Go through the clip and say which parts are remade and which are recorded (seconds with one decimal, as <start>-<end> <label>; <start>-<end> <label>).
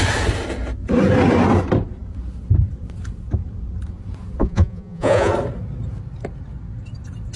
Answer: 0.0-4.4 recorded; 4.4-5.3 remade; 5.3-7.4 recorded